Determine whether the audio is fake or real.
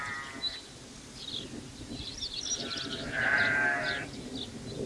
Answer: real